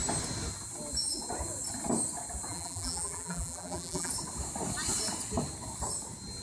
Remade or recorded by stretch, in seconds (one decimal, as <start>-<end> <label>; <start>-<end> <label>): 0.0-2.5 recorded; 2.5-4.1 remade; 4.1-6.4 recorded